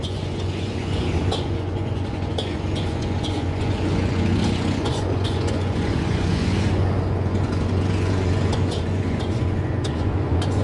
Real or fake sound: fake